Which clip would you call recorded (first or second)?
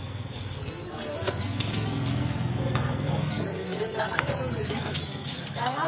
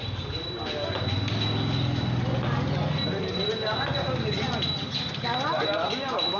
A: second